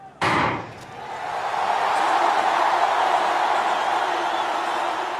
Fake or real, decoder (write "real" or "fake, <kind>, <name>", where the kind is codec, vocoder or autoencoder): real